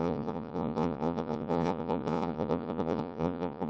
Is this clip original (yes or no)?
no